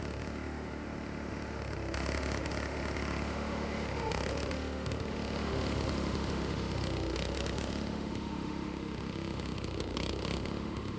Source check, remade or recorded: remade